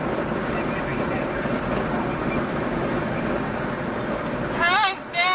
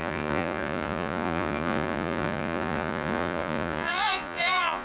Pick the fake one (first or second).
second